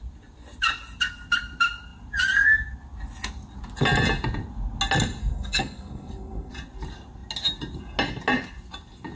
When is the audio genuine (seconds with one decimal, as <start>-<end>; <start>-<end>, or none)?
0.0-5.2; 6.5-9.2